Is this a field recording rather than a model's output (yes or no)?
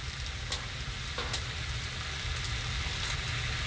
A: yes